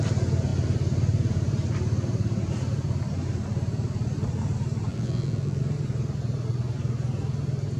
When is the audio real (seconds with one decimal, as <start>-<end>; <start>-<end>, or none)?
0.0-4.9; 5.6-7.8